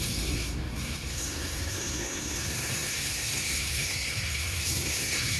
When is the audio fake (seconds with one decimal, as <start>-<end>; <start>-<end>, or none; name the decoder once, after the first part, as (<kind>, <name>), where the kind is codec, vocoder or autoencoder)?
0.0-5.4 (codec, SNAC)